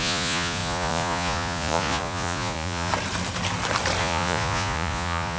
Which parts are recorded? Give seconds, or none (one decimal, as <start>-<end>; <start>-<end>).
2.9-4.0